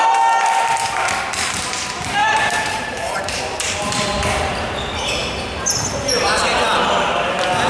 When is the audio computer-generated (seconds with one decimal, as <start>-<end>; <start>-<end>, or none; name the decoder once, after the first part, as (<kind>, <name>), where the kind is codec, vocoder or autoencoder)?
2.2-4.8 (vocoder, BigVGAN v2)